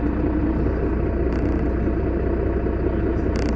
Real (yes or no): yes